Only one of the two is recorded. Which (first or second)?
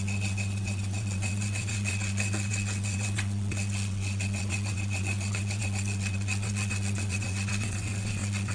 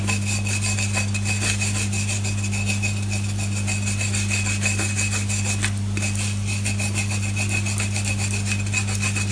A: second